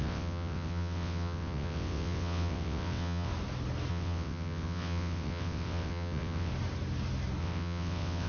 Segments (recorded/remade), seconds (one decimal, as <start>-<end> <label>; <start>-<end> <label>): 0.0-3.3 remade; 3.3-3.9 recorded; 3.9-6.5 remade; 6.5-7.4 recorded; 7.4-8.3 remade

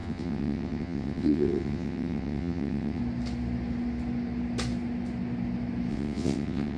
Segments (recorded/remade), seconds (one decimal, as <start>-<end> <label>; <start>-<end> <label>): 0.0-3.0 remade; 3.0-5.9 recorded; 5.9-6.8 remade

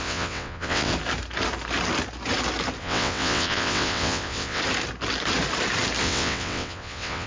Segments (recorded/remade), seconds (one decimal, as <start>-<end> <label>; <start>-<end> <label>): 0.0-0.9 remade; 0.9-2.8 recorded; 2.8-4.6 remade; 4.6-6.0 recorded; 6.0-7.3 remade

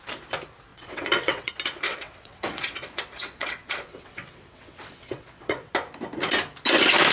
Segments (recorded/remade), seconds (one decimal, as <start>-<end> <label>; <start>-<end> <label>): 0.0-0.7 recorded; 0.7-1.5 remade; 1.5-1.9 recorded; 1.9-5.7 remade; 5.7-7.1 recorded

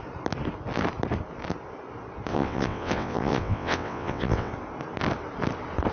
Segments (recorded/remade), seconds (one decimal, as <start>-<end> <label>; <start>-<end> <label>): 0.0-2.3 recorded; 2.3-4.5 remade; 4.5-5.9 recorded

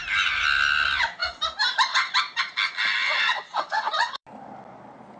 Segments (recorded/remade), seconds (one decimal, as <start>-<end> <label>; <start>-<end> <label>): 0.0-3.0 recorded; 3.0-4.2 remade; 4.2-5.2 recorded